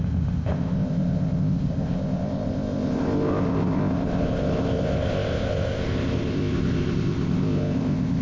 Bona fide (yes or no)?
no